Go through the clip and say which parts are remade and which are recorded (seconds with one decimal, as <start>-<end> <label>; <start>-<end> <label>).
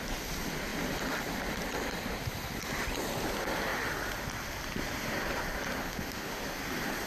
0.0-5.8 recorded; 5.8-6.4 remade; 6.4-7.1 recorded